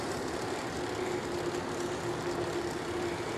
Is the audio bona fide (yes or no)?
yes